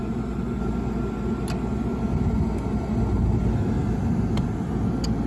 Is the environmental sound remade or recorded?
recorded